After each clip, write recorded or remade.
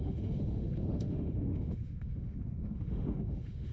remade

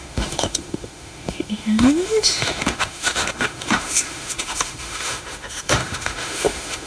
remade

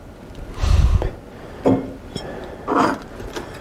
recorded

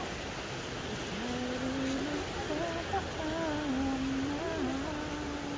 recorded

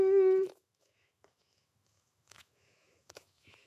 remade